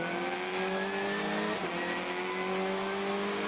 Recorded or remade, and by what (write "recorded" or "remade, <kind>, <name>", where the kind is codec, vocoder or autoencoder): recorded